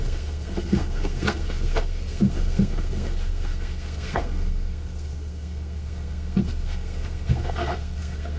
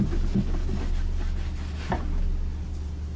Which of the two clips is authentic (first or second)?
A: second